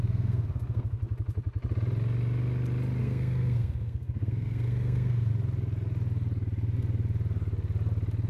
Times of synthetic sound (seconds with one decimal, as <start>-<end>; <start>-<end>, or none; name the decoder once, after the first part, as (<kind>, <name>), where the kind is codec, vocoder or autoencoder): 0.0-1.0 (codec, SNAC); 3.0-5.3